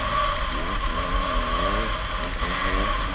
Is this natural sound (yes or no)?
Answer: yes